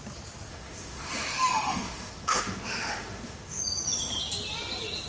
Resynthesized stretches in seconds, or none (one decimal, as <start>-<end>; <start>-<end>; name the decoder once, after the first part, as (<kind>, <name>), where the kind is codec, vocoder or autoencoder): 0.5-3.6 (autoencoder, DAC-VAE)